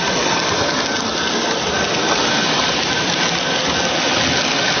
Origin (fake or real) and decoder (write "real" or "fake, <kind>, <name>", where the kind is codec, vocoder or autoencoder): real